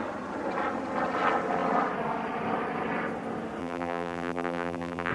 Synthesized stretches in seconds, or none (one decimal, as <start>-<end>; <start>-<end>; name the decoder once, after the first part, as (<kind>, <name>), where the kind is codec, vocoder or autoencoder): 3.6-5.1 (vocoder, BigVGAN v2)